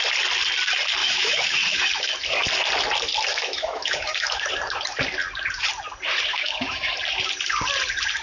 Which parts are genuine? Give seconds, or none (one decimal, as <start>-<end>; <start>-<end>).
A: 0.0-1.0; 2.1-3.3; 4.5-6.3; 7.0-8.2